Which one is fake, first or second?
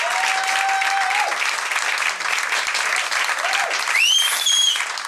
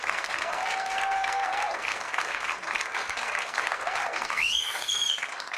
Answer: second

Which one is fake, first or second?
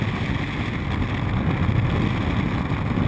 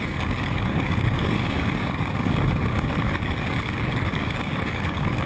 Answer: second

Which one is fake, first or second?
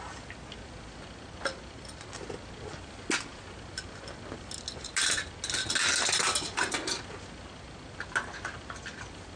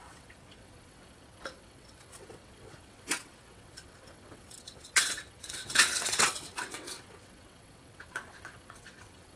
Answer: second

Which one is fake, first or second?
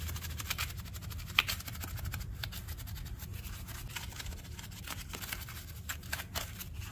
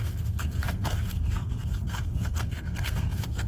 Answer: second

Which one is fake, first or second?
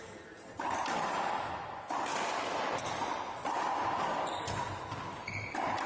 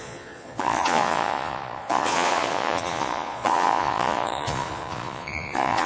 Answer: second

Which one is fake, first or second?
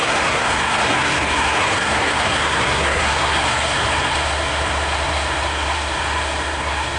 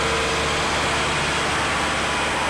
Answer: first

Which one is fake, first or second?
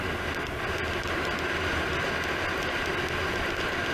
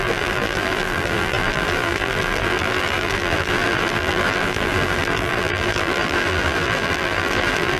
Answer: second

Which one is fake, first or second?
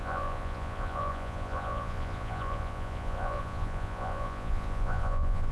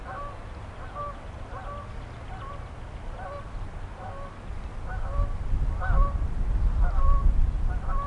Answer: first